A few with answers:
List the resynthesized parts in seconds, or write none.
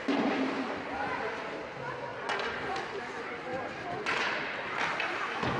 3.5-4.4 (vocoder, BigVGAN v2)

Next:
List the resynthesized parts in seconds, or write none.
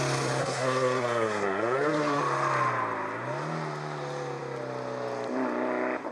0.4-2.2 (codec, SNAC)